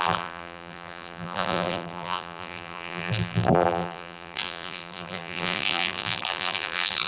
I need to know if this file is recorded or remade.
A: remade